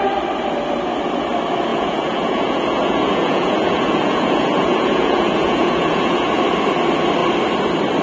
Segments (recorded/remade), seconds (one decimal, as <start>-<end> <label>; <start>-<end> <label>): 0.0-1.7 recorded; 1.7-6.4 remade; 6.4-8.0 recorded